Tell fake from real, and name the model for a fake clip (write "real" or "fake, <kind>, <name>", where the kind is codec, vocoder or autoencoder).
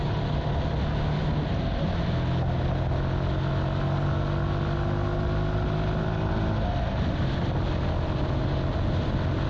real